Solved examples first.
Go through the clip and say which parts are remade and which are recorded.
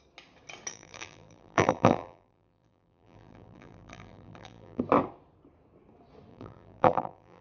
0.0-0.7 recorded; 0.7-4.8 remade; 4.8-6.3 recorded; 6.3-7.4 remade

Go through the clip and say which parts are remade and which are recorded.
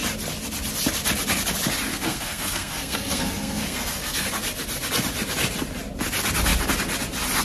0.0-1.9 recorded; 1.9-4.3 remade; 4.3-7.4 recorded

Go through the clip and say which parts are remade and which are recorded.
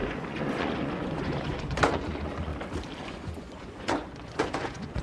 0.0-2.5 remade; 2.5-3.0 recorded; 3.0-5.0 remade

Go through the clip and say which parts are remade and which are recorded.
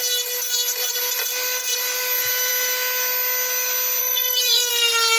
0.0-4.0 recorded; 4.0-4.7 remade; 4.7-5.2 recorded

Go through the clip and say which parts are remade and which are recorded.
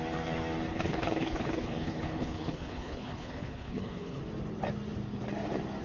0.0-0.7 recorded; 0.7-4.2 remade; 4.2-5.8 recorded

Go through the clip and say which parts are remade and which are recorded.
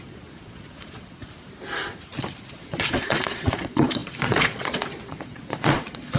0.0-1.2 remade; 1.2-2.5 recorded; 2.5-6.2 remade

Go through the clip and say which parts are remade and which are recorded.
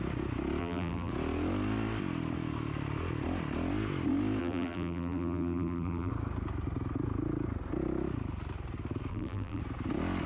0.0-0.6 recorded; 0.6-1.1 remade; 1.1-4.4 recorded; 4.4-6.1 remade; 6.1-9.1 recorded; 9.1-9.6 remade; 9.6-10.3 recorded